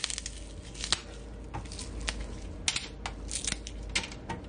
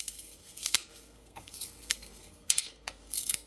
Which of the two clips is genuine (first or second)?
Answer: first